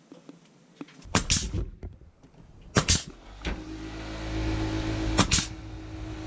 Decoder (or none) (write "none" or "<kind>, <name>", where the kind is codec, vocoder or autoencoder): none